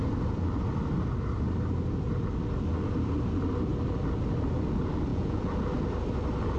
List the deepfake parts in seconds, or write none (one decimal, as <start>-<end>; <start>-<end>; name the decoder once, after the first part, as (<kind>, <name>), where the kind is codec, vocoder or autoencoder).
5.1-5.7 (vocoder, Vocos)